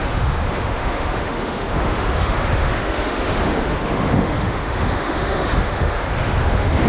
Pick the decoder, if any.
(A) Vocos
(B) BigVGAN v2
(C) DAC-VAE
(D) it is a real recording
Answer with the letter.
C